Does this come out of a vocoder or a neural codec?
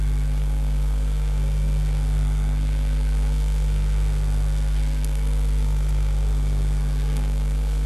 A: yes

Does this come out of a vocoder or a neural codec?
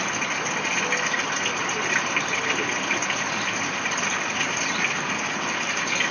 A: no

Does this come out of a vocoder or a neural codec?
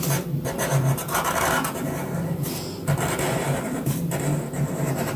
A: no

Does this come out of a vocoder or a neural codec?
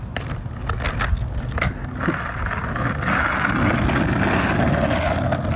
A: no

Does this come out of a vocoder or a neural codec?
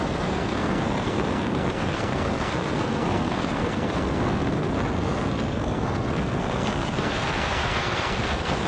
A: yes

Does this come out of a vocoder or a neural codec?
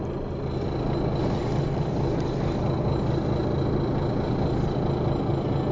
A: no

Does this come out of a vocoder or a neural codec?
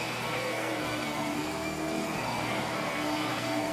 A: yes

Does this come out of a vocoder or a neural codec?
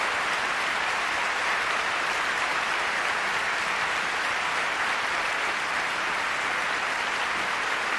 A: no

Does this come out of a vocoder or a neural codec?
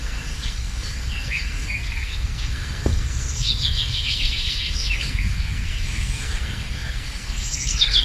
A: yes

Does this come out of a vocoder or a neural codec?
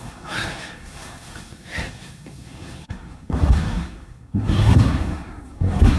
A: yes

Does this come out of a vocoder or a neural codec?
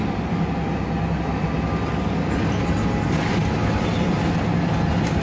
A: no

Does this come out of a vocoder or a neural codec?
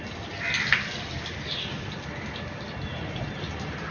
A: no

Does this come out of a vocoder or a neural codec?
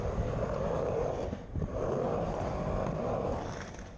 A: no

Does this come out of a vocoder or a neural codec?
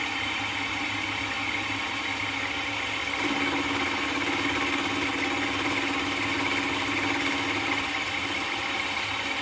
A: no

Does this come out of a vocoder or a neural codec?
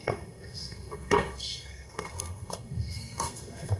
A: yes